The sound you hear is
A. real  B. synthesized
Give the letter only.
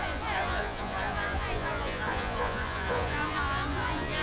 B